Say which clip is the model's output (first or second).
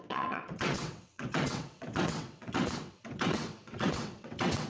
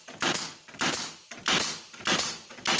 first